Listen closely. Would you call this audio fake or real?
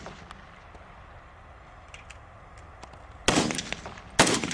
real